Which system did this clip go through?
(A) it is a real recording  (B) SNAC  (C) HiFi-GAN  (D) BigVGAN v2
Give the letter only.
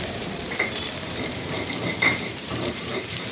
D